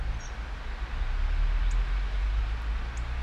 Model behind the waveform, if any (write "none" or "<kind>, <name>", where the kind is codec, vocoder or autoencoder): none